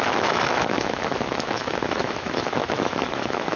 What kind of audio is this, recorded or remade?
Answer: remade